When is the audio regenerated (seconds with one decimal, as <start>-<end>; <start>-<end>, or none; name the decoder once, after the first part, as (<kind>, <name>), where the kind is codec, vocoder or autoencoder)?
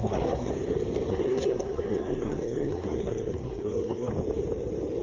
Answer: 0.0-0.5 (codec, SNAC); 1.1-4.1